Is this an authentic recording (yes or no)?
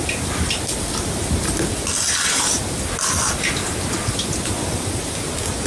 yes